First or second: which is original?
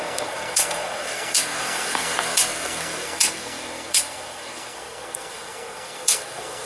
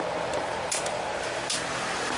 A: second